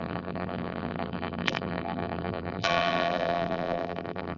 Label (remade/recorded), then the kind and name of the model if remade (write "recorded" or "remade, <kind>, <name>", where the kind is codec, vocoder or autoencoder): remade, vocoder, BigVGAN v2